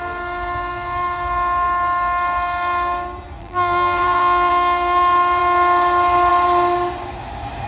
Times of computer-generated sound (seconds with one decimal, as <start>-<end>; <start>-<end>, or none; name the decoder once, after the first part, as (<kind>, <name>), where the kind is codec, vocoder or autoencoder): 3.4-4.5 (vocoder, BigVGAN v2)